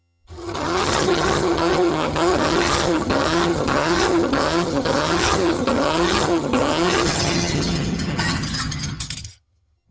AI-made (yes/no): yes